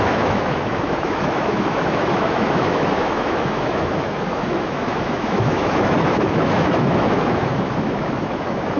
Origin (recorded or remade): remade